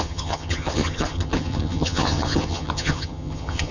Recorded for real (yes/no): no